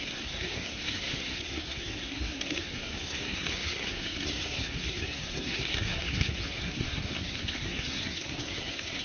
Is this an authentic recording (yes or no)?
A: no